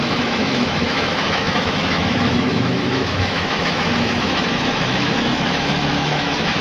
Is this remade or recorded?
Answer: remade